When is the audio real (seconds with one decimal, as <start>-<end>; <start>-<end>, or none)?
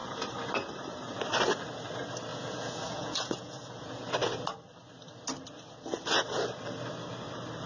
0.0-2.3; 4.1-7.7